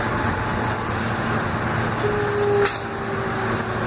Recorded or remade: recorded